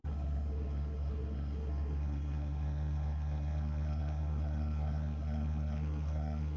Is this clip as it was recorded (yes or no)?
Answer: no